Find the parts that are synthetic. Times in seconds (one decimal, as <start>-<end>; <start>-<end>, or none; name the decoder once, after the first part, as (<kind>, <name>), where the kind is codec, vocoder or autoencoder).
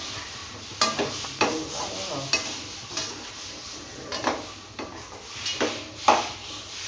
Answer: 0.0-0.4 (vocoder, BigVGAN v2); 3.3-4.1; 5.9-6.9